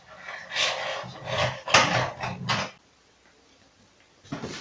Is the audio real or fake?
real